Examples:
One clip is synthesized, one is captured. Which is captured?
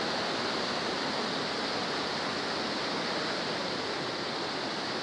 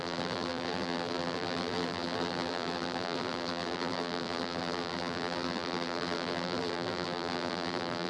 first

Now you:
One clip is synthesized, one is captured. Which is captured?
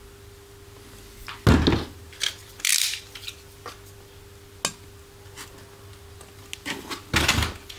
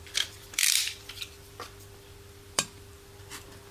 first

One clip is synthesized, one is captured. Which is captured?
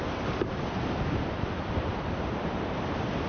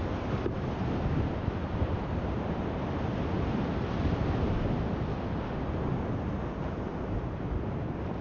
second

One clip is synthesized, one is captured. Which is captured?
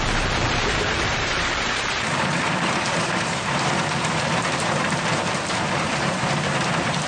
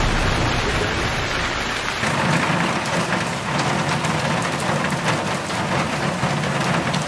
second